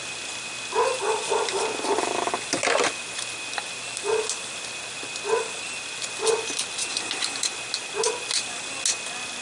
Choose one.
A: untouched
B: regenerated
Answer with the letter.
A